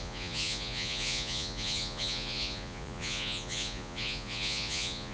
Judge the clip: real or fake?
fake